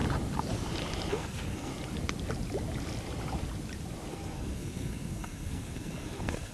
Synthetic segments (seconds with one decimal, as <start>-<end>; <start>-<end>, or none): 1.1-1.7; 4.1-6.5